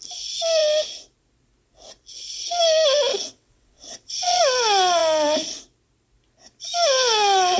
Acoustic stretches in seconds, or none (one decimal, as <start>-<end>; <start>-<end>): 0.0-3.1; 4.4-7.6